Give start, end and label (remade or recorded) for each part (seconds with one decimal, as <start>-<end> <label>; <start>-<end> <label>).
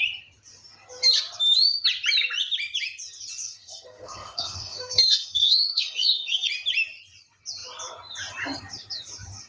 0.0-3.4 recorded; 3.4-6.5 remade; 6.5-9.5 recorded